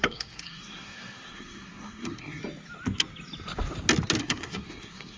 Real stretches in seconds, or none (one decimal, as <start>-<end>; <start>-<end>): 2.4-4.2